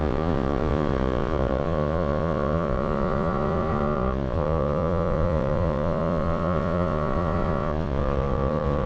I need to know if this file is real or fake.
fake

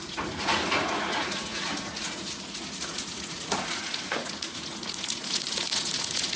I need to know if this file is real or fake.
fake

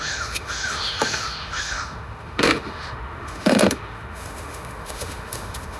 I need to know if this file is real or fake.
fake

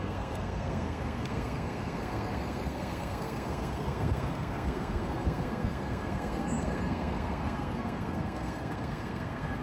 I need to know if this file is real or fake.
fake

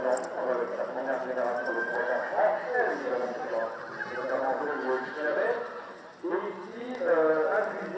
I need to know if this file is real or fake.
real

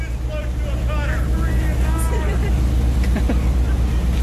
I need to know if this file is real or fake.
real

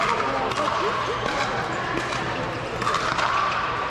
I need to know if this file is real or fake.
real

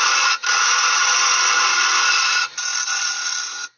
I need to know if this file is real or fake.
real